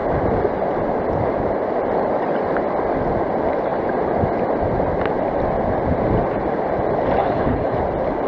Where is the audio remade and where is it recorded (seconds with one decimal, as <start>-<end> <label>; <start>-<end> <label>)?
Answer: 0.0-7.2 recorded; 7.2-7.8 remade; 7.8-8.3 recorded